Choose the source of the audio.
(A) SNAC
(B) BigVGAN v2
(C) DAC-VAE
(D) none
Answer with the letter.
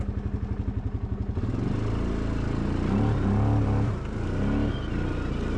D